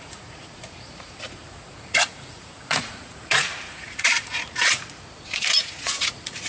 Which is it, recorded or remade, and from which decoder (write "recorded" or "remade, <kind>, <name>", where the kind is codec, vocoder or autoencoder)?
remade, vocoder, Vocos